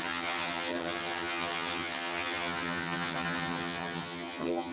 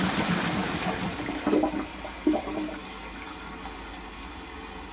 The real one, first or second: second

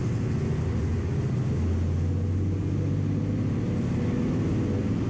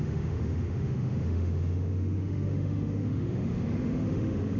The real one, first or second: first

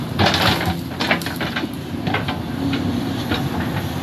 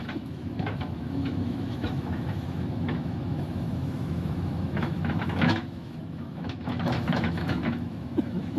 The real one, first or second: first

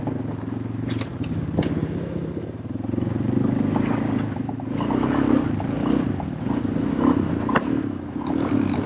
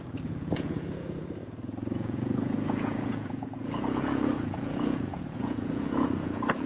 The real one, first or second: first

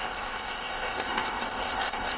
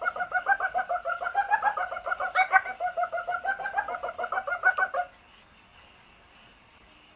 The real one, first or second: second